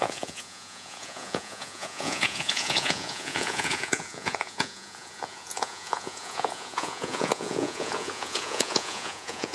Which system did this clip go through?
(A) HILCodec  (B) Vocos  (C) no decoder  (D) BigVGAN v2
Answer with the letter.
B